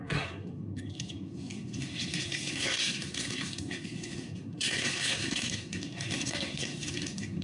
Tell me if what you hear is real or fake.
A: fake